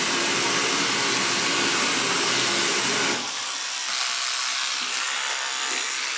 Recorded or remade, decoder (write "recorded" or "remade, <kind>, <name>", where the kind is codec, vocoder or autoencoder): recorded